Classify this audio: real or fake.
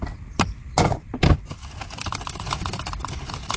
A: real